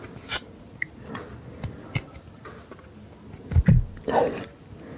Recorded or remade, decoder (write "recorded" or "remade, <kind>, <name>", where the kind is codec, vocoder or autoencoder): recorded